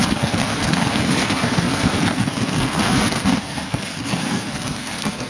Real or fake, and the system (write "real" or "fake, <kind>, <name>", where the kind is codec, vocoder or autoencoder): fake, codec, SNAC